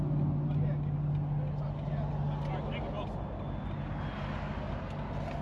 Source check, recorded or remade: recorded